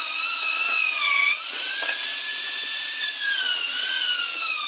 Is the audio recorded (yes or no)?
no